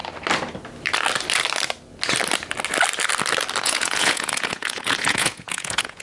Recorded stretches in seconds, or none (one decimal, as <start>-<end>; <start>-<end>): 0.0-3.6